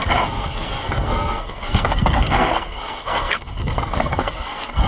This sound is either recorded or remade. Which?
remade